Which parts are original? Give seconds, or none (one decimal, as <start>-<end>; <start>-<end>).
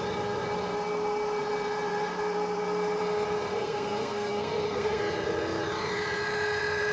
0.0-3.5; 5.0-6.9